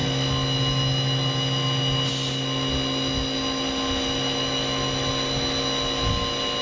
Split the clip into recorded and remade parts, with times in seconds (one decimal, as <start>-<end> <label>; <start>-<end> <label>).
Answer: 0.0-6.6 recorded